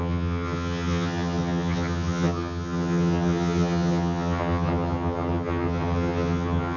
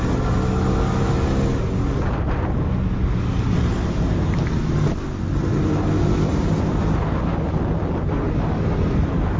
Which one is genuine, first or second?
second